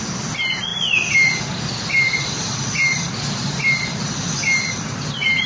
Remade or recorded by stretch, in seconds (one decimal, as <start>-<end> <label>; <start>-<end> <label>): 0.0-5.5 recorded